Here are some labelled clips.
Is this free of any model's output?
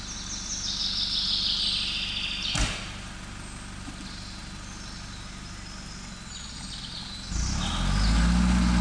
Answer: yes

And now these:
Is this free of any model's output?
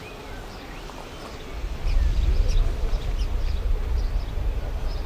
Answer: yes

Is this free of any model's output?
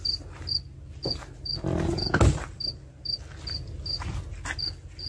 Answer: yes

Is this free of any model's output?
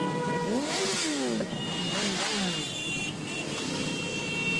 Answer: yes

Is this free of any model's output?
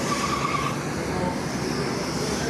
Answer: yes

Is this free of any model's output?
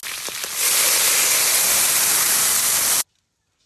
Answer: yes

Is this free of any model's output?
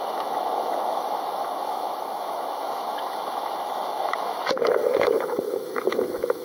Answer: no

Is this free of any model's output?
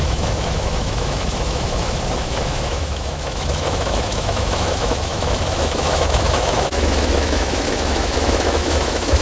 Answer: no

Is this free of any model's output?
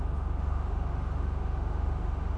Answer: no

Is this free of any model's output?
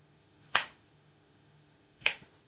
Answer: no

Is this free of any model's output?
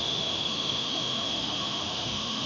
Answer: no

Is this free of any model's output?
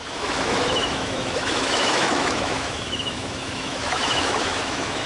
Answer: no